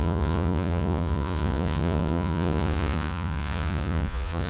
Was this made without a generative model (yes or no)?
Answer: no